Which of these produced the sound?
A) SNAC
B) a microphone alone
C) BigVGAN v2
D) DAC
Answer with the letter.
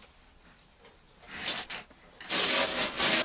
B